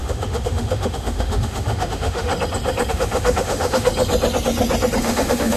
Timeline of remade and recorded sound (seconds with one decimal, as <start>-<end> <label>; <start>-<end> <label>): 0.0-2.3 remade; 2.3-2.9 recorded; 2.9-3.9 remade; 3.9-5.0 recorded; 5.0-5.6 remade